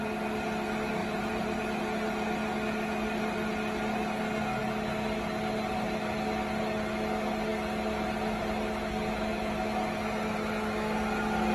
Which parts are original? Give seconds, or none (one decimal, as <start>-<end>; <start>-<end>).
0.0-1.0; 1.6-11.5